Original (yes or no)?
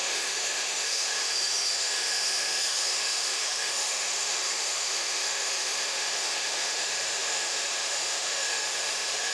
no